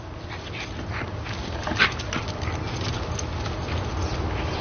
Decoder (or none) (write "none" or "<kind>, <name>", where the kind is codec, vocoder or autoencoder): none